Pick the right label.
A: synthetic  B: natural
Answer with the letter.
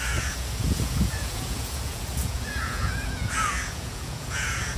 A